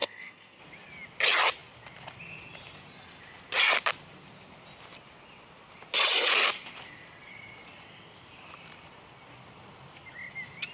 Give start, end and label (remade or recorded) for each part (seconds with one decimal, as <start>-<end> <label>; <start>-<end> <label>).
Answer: 0.0-0.6 remade; 0.6-10.7 recorded